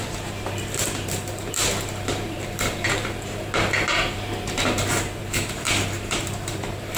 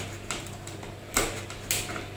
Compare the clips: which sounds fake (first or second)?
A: first